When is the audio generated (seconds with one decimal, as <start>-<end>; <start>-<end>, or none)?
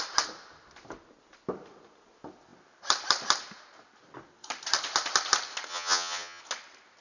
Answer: 5.7-6.4